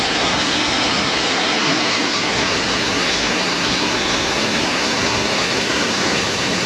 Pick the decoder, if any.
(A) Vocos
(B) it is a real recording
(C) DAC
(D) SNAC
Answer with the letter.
D